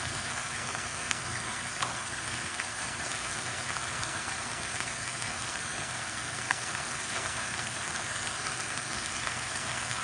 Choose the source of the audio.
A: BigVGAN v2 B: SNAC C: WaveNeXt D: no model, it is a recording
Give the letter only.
B